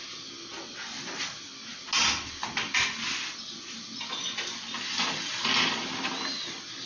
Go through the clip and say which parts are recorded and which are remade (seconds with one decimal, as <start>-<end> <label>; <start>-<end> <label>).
0.0-6.9 recorded